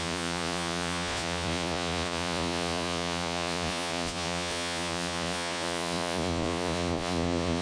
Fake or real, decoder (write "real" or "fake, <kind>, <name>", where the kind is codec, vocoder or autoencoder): fake, vocoder, Vocos